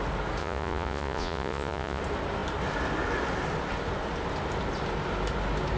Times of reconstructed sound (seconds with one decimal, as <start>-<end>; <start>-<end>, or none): 0.4-2.0